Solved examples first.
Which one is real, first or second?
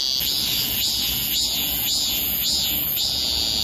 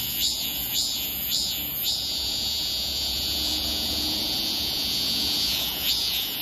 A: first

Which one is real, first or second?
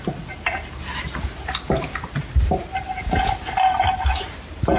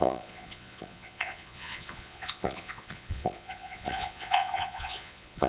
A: first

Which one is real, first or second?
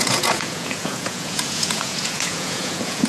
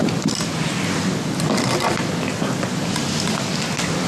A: second